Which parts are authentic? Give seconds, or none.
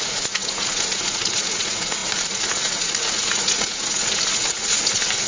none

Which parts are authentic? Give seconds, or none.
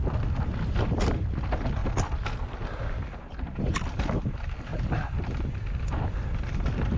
0.0-7.0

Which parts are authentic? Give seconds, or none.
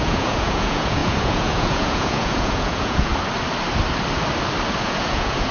3.1-4.8